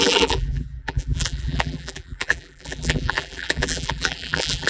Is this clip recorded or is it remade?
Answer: remade